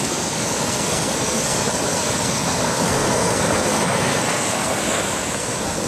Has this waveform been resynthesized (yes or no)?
yes